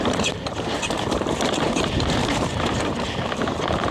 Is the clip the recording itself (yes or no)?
no